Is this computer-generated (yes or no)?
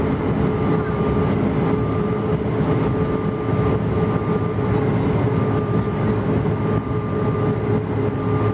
no